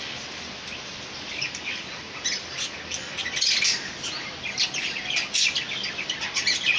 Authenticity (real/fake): real